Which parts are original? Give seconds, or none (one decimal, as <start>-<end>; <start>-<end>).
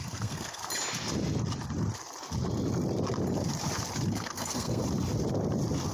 0.6-4.1; 4.8-5.9